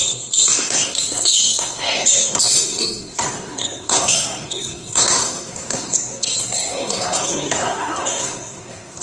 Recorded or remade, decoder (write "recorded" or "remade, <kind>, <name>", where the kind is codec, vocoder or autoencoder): remade, codec, SNAC